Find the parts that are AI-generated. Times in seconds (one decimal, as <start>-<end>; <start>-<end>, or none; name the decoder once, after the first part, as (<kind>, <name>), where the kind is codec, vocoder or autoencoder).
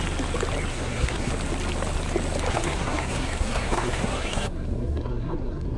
0.7-1.3 (codec, SNAC); 2.5-5.8